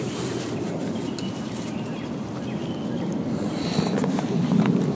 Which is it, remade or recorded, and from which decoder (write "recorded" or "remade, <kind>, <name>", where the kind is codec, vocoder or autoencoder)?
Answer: recorded